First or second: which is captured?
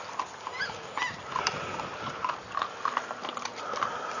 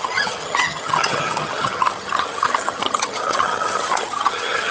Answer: first